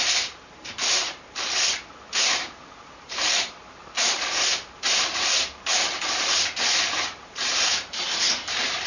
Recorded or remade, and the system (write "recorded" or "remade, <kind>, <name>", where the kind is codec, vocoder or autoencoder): remade, vocoder, BigVGAN v2